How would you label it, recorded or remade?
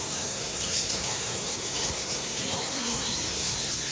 remade